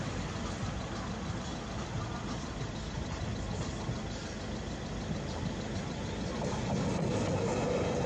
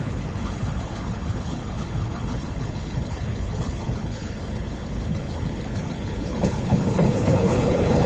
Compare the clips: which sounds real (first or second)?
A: first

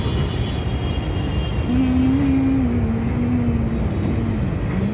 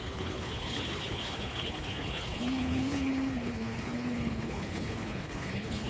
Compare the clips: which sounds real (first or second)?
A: first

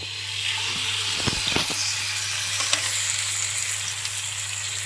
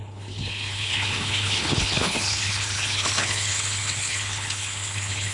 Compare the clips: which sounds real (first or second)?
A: first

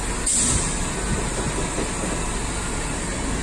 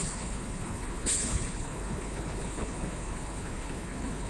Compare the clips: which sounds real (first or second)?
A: first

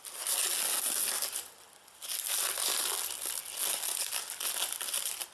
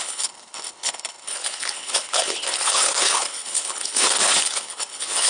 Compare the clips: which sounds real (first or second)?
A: first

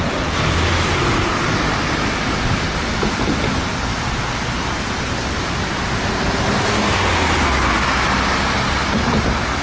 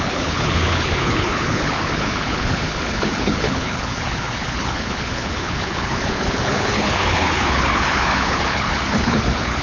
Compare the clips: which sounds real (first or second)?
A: first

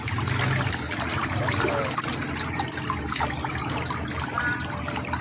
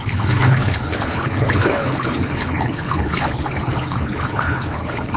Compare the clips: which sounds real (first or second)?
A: first